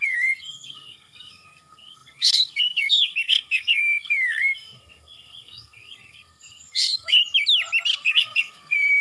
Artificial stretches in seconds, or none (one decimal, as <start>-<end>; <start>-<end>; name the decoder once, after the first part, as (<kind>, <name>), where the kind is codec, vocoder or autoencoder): 0.0-7.2 (codec, SNAC); 8.0-9.0